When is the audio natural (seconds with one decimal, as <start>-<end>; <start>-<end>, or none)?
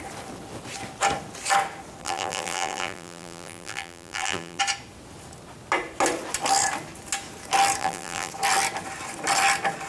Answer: 0.0-2.0; 4.6-7.8; 8.3-9.9